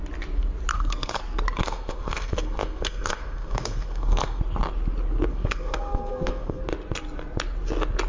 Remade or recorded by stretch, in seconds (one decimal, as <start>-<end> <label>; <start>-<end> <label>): 0.0-0.7 recorded; 0.7-1.2 remade; 1.2-1.6 recorded; 1.6-4.4 remade; 4.4-5.3 recorded; 5.3-6.6 remade; 6.6-8.1 recorded